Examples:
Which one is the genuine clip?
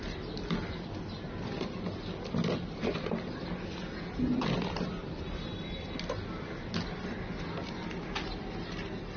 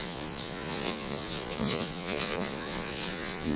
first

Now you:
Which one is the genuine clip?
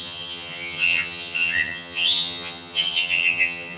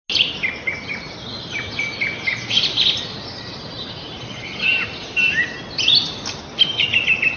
second